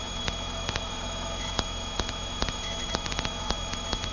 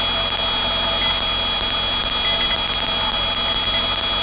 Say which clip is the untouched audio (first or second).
second